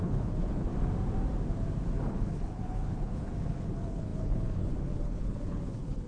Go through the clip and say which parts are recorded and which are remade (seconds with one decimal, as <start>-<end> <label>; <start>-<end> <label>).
0.0-0.7 remade; 0.7-2.1 recorded; 2.1-6.1 remade